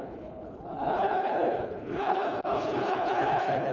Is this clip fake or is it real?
fake